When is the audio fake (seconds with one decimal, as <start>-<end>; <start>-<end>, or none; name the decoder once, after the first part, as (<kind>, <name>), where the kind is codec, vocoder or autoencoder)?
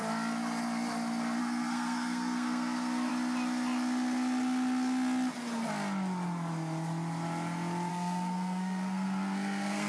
1.4-3.1 (codec, SNAC); 7.9-9.9